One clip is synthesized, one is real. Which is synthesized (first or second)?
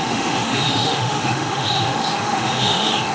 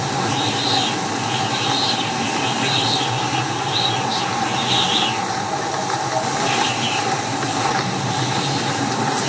first